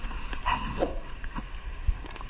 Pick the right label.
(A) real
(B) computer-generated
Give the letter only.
B